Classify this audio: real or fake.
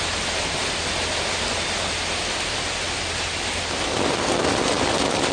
real